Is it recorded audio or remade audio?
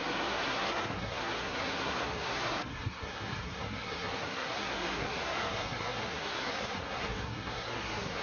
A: remade